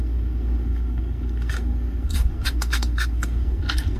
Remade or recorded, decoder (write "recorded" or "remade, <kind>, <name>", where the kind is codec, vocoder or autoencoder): remade, codec, SNAC